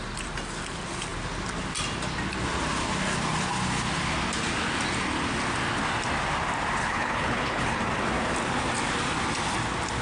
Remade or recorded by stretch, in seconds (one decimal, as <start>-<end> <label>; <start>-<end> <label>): 0.0-6.8 recorded; 6.8-7.8 remade; 7.8-10.0 recorded